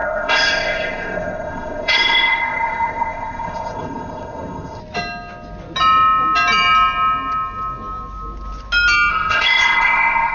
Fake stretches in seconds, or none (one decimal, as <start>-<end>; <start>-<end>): 0.0-4.8; 9.1-10.3